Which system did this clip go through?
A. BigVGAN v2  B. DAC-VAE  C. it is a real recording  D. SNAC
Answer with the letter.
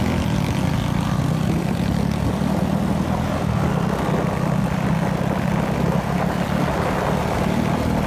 C